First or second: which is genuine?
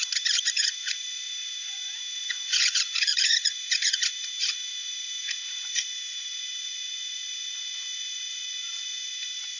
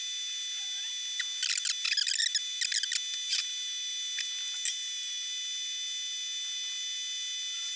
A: second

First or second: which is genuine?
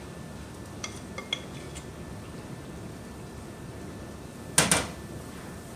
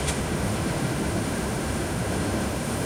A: first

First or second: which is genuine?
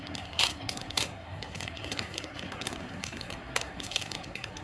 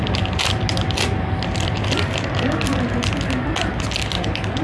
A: second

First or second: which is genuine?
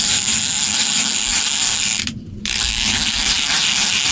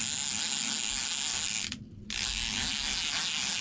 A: second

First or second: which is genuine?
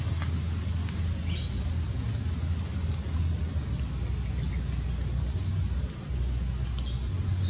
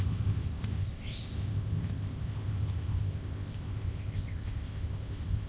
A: first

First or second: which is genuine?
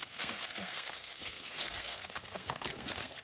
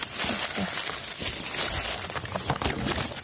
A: second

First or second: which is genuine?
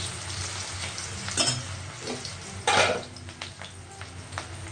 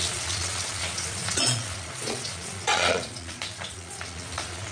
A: first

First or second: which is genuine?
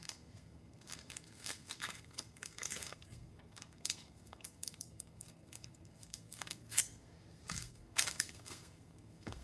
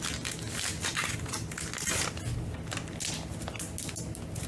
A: second